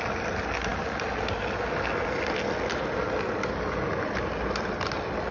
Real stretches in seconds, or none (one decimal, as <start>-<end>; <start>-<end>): 0.0-5.3